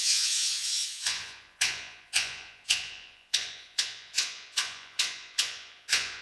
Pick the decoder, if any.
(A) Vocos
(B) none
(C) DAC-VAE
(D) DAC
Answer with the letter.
A